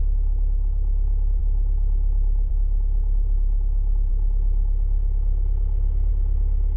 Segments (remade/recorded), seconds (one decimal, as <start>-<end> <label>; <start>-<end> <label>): 0.0-6.8 recorded